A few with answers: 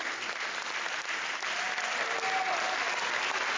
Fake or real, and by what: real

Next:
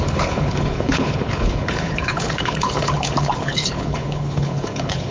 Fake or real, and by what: fake, codec, HILCodec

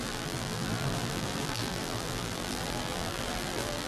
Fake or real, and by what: fake, vocoder, BigVGAN v2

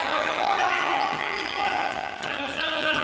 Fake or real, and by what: fake, vocoder, HiFi-GAN